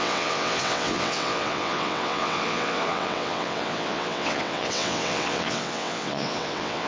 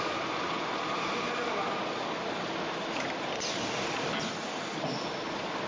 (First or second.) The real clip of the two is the second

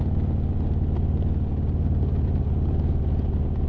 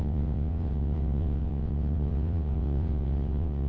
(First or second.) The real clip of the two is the first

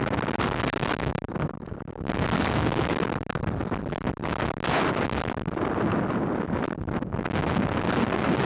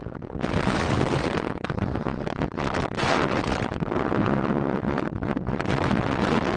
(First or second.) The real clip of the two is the first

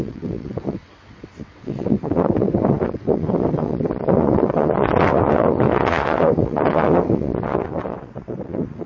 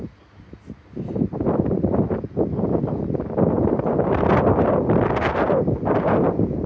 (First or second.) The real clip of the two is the second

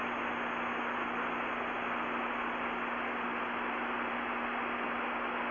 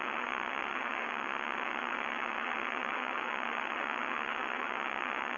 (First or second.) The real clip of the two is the first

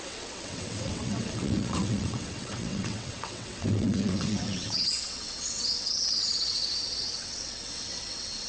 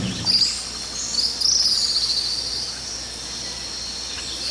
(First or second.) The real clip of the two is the second